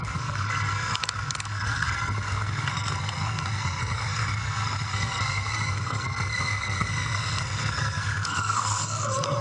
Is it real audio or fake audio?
fake